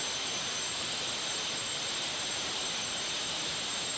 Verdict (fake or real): fake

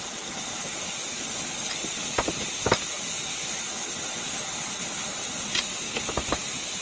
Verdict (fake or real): real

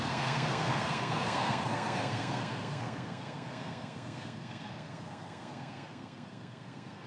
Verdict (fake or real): fake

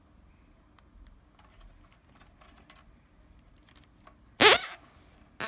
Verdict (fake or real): real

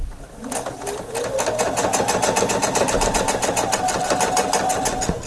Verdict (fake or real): real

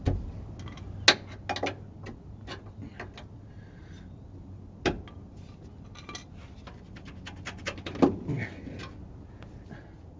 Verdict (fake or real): real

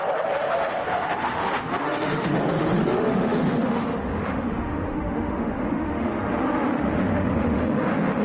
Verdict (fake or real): fake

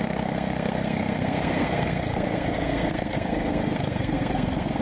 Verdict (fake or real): fake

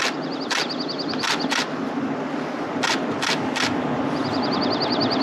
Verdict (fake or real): real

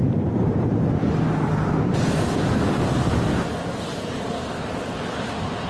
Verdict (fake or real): real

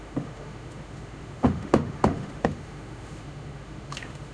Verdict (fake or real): fake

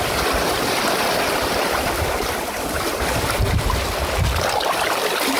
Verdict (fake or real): fake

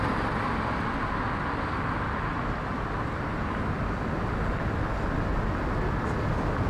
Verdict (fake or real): real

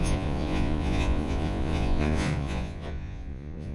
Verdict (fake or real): fake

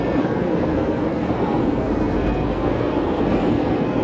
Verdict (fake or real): fake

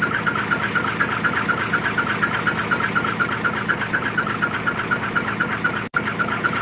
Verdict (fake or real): real